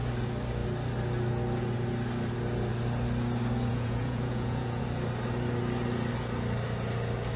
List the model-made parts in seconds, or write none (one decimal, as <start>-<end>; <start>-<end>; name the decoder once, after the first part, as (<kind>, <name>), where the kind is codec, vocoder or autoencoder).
3.7-4.8 (vocoder, Vocos)